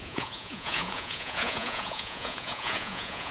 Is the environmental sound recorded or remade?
remade